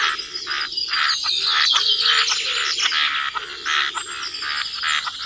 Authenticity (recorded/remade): recorded